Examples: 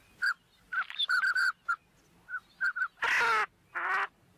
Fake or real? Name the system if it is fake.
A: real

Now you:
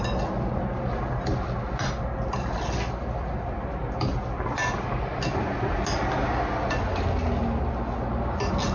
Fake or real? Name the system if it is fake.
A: real